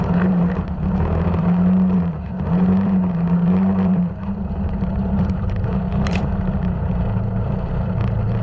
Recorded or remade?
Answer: remade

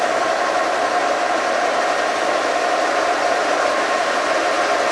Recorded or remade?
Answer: recorded